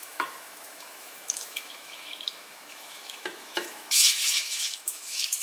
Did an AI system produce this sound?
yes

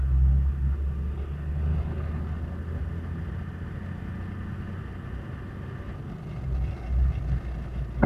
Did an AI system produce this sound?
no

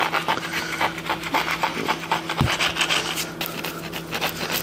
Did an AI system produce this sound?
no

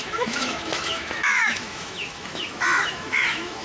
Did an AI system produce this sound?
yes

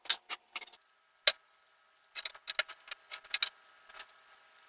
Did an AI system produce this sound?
no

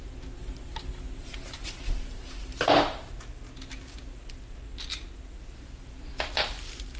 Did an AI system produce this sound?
no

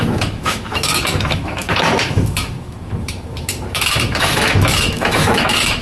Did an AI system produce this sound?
yes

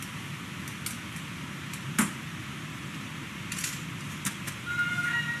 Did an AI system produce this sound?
no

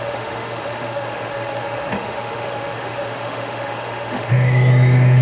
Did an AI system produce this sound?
yes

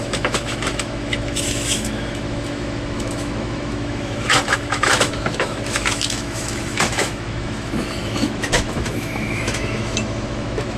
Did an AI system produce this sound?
yes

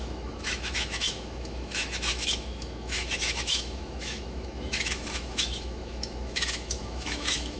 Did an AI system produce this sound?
yes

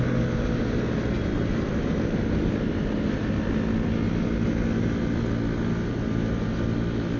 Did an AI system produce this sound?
no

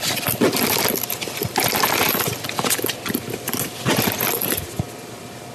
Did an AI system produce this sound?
no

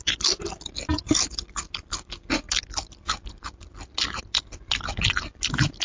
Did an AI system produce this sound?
no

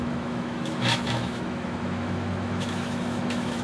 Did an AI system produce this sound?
yes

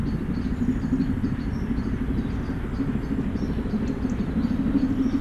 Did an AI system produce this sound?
no